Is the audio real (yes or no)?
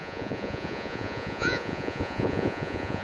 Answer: no